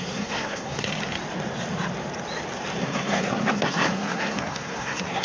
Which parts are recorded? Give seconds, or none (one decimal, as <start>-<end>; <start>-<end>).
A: 0.9-2.8